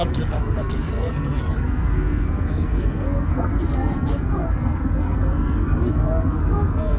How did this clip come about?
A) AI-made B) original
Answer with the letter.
A